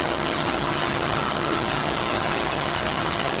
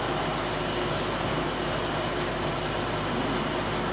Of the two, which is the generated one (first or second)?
first